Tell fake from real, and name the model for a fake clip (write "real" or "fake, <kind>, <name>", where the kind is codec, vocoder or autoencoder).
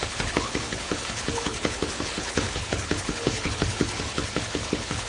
fake, codec, HILCodec